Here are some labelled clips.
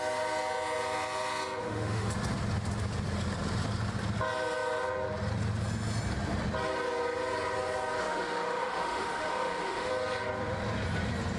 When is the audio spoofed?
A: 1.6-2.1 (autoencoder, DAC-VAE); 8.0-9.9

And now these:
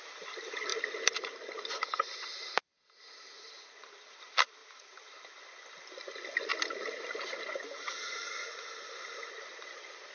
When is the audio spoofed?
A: 4.6-5.1 (vocoder, BigVGAN v2); 6.5-10.1